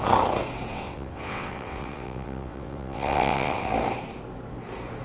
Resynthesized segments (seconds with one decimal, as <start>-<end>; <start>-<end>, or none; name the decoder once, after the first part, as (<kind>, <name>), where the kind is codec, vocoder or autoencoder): 0.7-3.7 (vocoder, WaveNeXt)